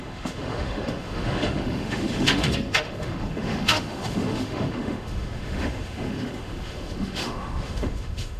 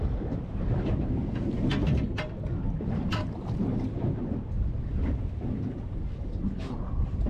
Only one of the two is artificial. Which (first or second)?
first